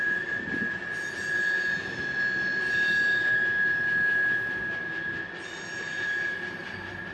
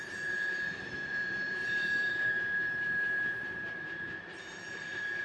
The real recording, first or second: first